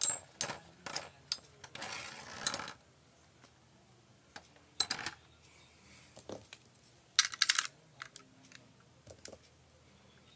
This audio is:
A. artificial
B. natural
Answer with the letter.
B